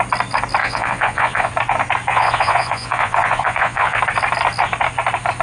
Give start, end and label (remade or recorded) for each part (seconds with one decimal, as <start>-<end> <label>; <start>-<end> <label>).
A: 0.0-0.6 recorded; 0.6-1.5 remade; 1.5-2.1 recorded; 2.1-4.0 remade; 4.0-5.4 recorded